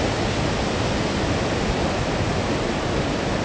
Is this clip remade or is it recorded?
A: recorded